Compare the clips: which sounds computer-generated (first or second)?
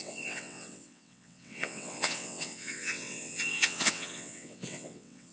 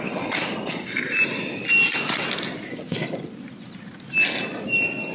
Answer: first